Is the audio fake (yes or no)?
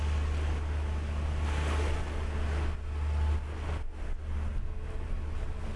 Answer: no